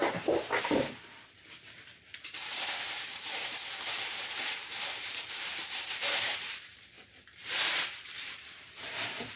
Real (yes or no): no